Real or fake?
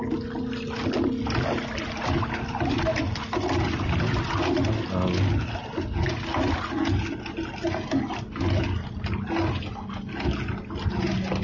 real